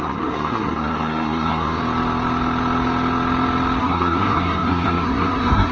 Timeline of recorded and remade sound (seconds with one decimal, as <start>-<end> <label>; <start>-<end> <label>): 0.0-1.8 remade; 1.8-3.8 recorded; 3.8-5.7 remade

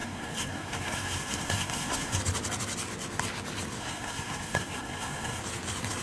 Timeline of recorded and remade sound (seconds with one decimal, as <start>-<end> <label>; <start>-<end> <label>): 0.0-2.2 remade; 2.2-3.8 recorded; 3.8-5.4 remade; 5.4-6.0 recorded